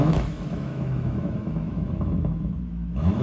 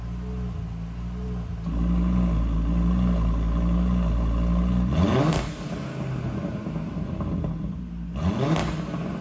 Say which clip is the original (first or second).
second